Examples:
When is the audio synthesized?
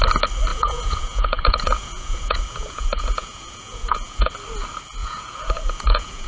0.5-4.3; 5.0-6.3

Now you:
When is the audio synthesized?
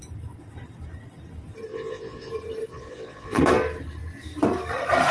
1.7-2.3; 2.7-3.4